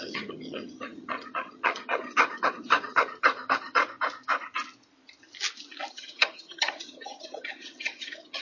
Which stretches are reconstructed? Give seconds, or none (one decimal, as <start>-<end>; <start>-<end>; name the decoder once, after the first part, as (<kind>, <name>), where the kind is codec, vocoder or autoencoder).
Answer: 0.0-3.8 (vocoder, HiFi-GAN); 5.9-8.4